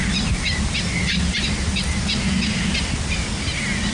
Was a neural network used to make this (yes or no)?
no